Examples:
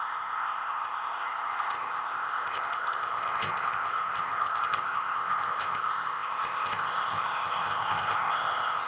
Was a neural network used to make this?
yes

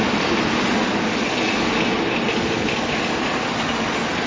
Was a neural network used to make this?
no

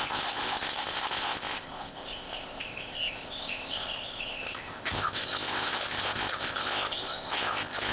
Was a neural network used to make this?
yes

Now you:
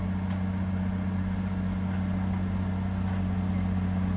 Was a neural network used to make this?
no